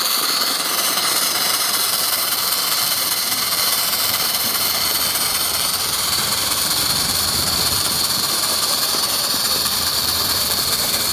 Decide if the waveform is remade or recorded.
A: remade